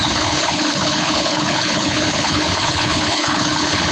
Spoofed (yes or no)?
yes